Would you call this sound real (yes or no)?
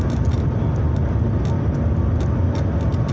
yes